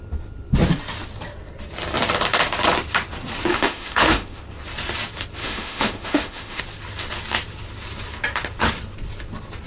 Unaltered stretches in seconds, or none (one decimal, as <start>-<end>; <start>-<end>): 0.0-3.5; 4.4-5.4; 6.6-9.7

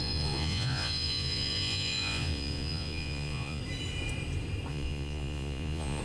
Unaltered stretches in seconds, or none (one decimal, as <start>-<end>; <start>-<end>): 3.6-4.7

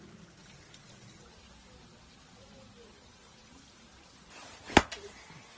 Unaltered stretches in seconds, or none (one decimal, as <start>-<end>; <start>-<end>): 0.0-5.6

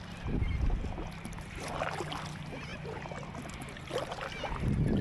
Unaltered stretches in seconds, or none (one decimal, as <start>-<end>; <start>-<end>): 0.0-5.0